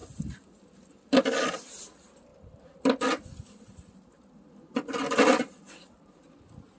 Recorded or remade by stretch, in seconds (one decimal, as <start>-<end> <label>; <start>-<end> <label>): 0.0-6.8 recorded